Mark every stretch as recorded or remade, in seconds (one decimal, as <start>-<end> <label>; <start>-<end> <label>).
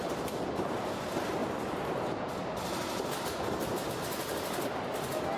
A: 0.0-1.4 recorded; 1.4-3.9 remade; 3.9-5.4 recorded